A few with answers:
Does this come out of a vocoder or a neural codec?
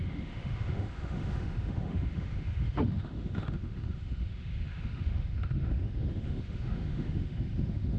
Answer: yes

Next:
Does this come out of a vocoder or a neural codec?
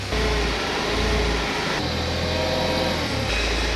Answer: no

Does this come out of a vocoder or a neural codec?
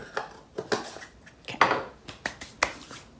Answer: no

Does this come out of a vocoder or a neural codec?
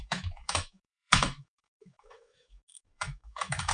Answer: yes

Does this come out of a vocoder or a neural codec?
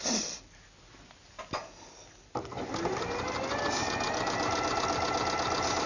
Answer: no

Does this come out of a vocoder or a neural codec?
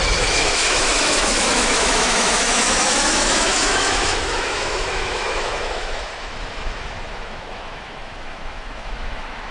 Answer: yes